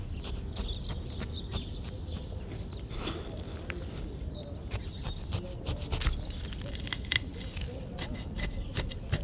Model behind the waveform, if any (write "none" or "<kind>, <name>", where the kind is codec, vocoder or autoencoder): none